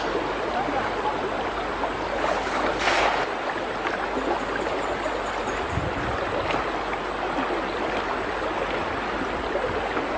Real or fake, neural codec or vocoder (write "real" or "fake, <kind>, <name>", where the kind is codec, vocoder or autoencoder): real